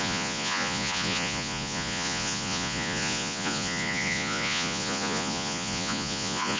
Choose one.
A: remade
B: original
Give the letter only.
A